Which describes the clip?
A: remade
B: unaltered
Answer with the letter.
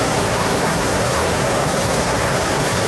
A